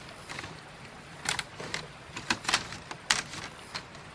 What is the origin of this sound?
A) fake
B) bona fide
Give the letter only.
B